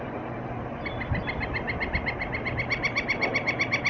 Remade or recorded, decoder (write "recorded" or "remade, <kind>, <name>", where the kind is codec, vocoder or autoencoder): recorded